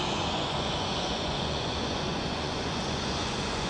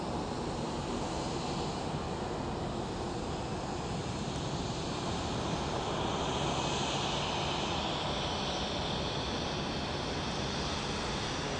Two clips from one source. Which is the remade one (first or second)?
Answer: first